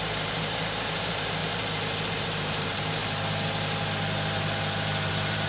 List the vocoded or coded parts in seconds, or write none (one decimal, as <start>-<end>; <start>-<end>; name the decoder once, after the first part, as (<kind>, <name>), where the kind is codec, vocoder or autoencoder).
0.0-1.4 (vocoder, BigVGAN v2); 2.2-3.0; 5.1-5.5